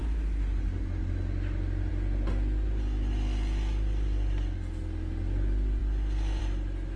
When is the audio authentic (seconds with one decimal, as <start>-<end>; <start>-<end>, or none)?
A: 0.0-7.0